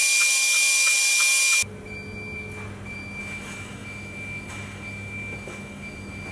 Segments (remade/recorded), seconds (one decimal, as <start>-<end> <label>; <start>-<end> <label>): 0.0-3.2 recorded; 3.2-6.3 remade